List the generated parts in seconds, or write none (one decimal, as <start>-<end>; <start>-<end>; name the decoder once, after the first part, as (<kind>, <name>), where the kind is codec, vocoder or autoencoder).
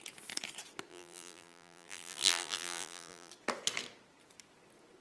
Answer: 0.9-3.3 (vocoder, BigVGAN v2)